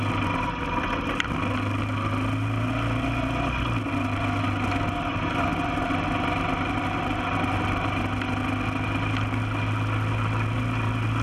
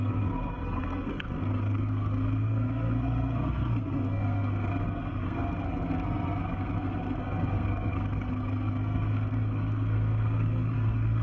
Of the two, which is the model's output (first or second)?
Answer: second